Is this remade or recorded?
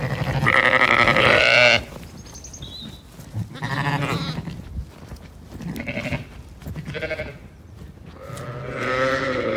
recorded